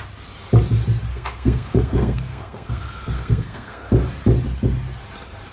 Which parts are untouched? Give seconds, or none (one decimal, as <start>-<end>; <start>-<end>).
0.0-1.1; 3.9-5.5